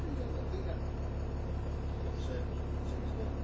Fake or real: real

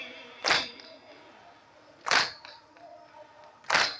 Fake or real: real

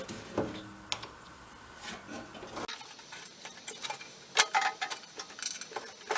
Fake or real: real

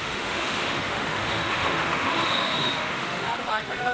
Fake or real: fake